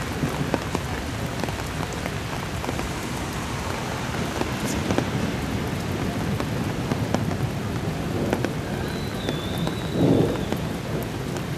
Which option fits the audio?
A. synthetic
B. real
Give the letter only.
B